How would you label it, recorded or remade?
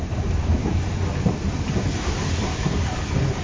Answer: recorded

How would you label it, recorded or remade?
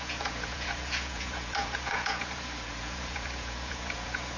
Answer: remade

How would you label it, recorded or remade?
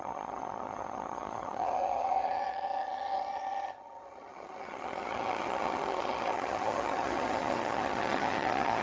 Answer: remade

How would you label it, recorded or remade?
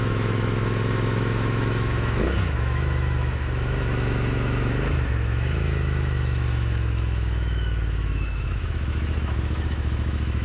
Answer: remade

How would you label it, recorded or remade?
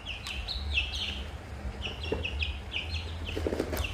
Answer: recorded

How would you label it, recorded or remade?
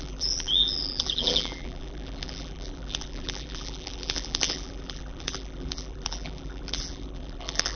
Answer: remade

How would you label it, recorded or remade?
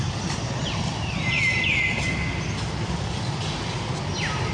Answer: recorded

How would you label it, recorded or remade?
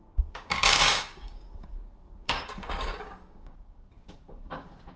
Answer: remade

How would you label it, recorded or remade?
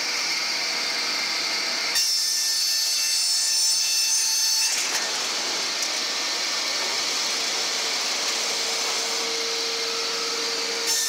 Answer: recorded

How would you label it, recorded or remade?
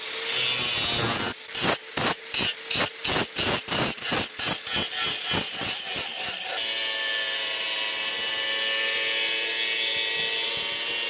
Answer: recorded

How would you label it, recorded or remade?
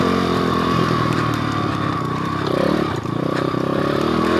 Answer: remade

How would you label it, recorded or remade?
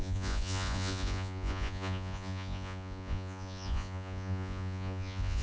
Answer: remade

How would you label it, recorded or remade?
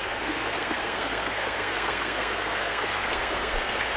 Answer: remade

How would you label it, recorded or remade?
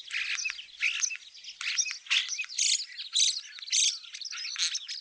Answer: recorded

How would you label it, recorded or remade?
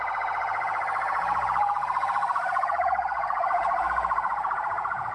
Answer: remade